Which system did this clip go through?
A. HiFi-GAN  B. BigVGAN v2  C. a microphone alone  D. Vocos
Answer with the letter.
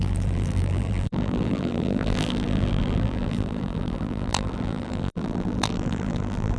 B